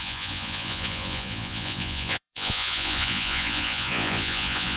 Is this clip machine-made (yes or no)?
yes